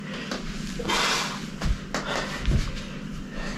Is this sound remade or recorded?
recorded